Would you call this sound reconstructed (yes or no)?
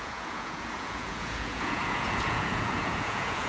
yes